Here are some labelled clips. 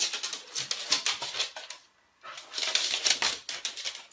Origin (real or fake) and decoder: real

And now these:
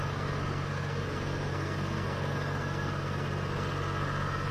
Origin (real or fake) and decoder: fake, codec, SNAC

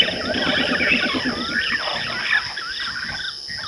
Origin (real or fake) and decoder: real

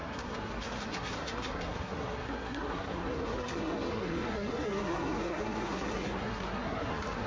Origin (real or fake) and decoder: fake, codec, SNAC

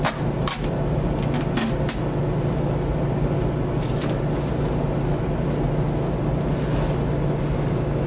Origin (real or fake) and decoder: real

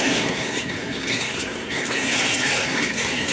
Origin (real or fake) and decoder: fake, codec, SNAC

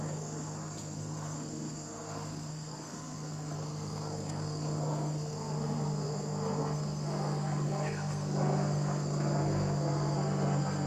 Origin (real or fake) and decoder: fake, codec, SNAC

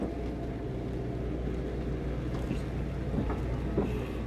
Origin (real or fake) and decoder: real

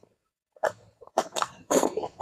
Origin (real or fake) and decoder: fake, codec, SNAC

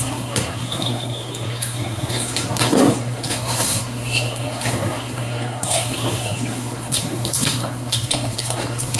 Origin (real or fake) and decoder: fake, codec, SNAC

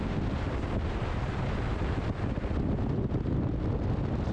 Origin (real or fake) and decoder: real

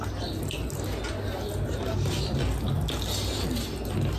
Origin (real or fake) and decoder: real